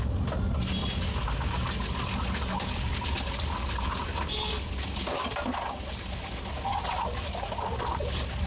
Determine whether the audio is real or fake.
real